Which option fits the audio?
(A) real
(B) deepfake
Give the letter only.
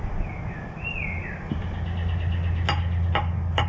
A